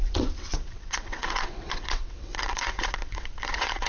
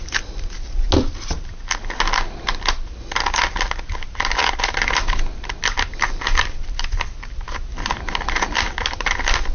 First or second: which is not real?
first